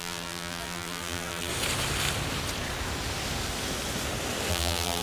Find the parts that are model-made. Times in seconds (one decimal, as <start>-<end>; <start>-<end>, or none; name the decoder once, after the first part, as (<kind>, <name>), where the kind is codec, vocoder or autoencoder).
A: 0.0-1.5 (vocoder, BigVGAN v2); 4.5-5.0